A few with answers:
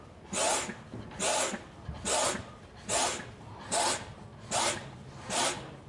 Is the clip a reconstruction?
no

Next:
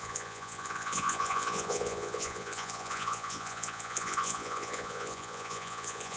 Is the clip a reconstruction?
yes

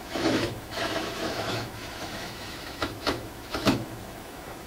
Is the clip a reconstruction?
yes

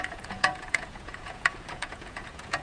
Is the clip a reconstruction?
yes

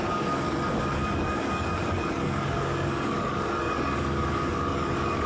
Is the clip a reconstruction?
yes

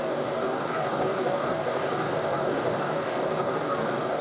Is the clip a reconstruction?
yes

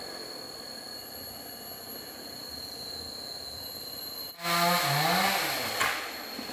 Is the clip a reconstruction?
no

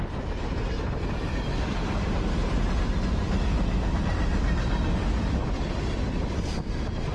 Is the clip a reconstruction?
no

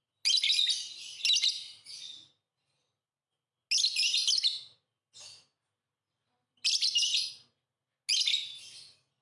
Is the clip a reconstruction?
no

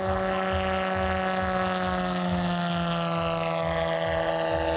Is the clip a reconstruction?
no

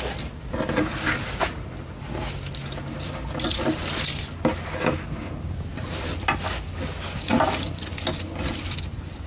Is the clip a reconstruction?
no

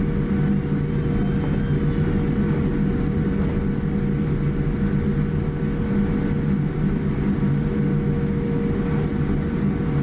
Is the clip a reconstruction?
no